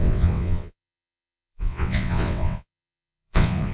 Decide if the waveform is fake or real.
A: fake